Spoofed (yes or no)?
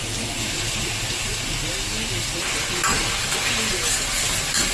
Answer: no